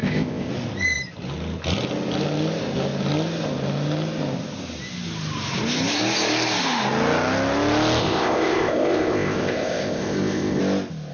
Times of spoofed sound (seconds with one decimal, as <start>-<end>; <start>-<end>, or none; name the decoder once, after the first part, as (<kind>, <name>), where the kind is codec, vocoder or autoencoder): 0.0-0.5 (codec, ZipCodec); 8.0-10.6

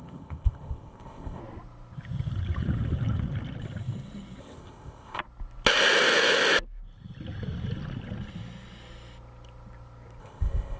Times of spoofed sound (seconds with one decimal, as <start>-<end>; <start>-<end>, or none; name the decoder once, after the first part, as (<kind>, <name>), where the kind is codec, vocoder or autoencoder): 0.0-1.4 (codec, ZipCodec); 4.4-5.2; 10.2-10.8

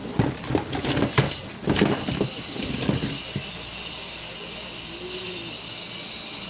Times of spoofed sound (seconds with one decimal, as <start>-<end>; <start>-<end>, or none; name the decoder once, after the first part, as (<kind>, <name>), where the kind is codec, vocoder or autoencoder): none

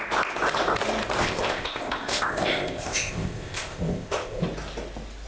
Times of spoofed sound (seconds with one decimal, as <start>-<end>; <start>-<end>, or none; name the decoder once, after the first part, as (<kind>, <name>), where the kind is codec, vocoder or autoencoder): 1.2-4.4 (codec, ZipCodec)

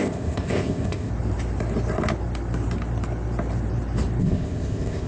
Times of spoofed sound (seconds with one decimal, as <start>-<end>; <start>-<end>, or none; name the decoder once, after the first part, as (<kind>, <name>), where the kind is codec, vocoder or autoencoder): 0.0-1.1 (codec, ZipCodec); 4.2-5.1

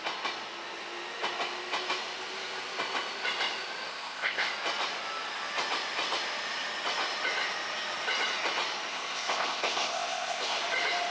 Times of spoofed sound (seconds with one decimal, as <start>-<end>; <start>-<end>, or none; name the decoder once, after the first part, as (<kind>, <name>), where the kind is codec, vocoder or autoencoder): 3.9-4.5 (codec, ZipCodec); 8.9-10.6

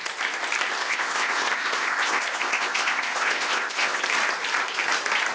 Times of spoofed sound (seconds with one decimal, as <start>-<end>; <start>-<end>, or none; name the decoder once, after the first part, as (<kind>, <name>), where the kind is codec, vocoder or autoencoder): 0.8-4.0 (codec, ZipCodec)